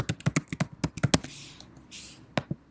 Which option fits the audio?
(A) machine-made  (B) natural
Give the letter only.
B